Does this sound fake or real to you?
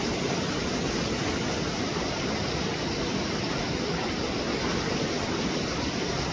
real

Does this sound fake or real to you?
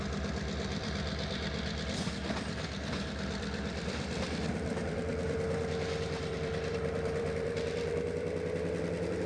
fake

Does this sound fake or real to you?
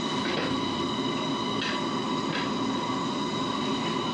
real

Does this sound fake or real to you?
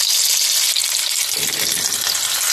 real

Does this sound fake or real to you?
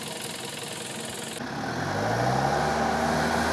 real